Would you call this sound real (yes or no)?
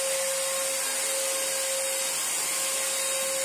yes